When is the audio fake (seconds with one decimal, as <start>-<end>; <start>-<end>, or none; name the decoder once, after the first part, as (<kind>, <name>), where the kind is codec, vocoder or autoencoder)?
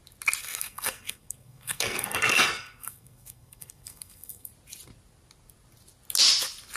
0.4-4.5 (codec, SNAC)